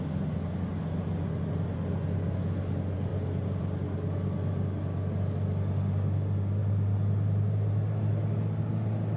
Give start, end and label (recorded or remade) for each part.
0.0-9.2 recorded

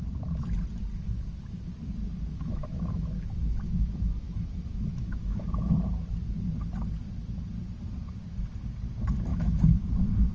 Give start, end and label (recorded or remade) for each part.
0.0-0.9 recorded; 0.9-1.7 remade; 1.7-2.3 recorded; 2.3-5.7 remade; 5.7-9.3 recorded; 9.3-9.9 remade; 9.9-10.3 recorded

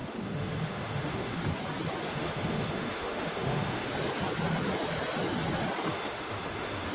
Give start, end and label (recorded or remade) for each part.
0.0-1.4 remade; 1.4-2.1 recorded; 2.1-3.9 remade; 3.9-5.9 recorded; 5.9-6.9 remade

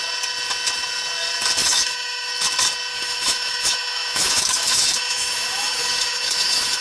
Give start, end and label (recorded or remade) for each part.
0.0-1.6 recorded; 1.6-2.3 remade; 2.3-2.9 recorded; 2.9-6.8 remade

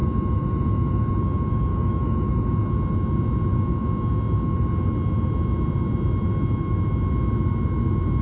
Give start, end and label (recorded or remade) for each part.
0.0-1.1 remade; 1.1-1.7 recorded; 1.7-2.3 remade; 2.3-8.2 recorded

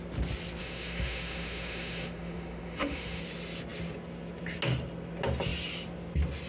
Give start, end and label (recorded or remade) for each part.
0.0-0.6 recorded; 0.6-3.2 remade; 3.2-6.5 recorded

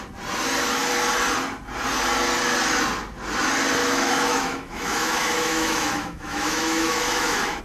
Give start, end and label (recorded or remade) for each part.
0.0-3.8 recorded; 3.8-7.6 remade